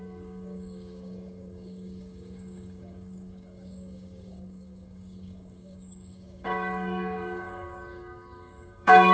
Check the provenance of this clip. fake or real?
fake